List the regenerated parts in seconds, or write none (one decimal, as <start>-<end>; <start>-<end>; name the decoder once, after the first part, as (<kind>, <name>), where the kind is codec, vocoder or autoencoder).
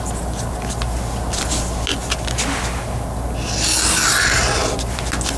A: none